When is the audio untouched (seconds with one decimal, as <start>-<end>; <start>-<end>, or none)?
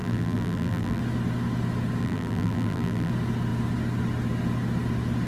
1.0-2.0; 3.1-5.3